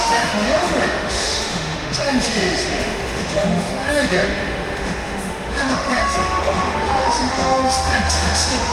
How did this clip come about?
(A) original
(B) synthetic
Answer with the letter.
B